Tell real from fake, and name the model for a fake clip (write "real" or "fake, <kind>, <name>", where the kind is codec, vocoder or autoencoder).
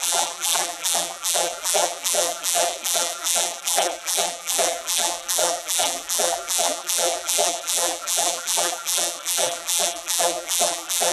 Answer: fake, vocoder, BigVGAN v2